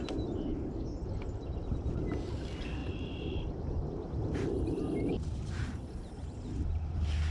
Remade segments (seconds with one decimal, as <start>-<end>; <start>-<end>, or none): 2.8-7.3